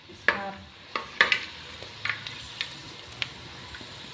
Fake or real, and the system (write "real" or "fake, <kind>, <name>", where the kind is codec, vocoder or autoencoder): real